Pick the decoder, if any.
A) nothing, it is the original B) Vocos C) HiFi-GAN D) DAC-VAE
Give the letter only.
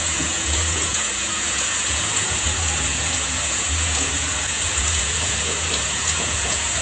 B